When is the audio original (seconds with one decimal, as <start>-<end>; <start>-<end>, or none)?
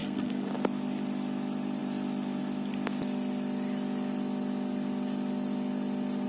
0.5-6.3